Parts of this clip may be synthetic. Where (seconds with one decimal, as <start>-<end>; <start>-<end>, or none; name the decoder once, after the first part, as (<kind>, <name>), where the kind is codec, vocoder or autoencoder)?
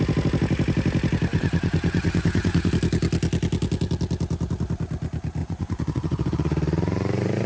1.3-2.7 (vocoder, Vocos); 5.4-7.5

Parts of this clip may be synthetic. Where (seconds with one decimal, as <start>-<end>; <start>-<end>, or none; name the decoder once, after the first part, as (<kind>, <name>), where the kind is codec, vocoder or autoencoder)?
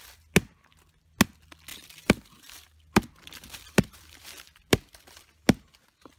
1.7-5.2 (vocoder, BigVGAN v2)